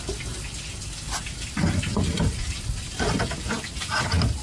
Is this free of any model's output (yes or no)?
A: yes